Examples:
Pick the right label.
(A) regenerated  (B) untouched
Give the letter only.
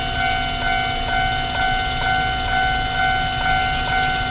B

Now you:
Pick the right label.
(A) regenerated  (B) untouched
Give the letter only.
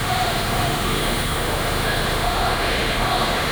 A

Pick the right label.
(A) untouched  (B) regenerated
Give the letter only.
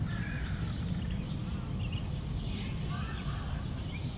A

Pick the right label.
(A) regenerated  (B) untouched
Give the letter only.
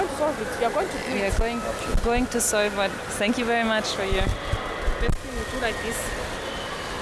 B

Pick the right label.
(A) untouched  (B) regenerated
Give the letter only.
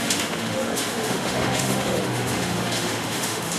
B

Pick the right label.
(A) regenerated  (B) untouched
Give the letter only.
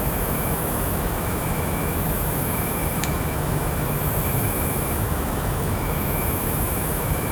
A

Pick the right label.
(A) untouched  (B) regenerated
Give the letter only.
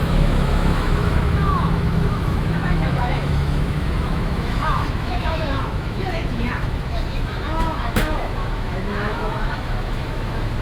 B